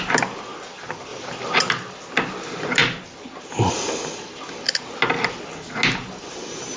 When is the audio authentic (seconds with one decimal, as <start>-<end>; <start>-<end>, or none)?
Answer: 0.0-6.8